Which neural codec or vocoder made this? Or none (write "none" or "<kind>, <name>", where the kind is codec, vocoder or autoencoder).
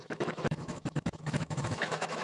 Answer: autoencoder, DAC-VAE